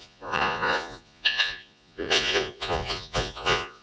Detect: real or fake fake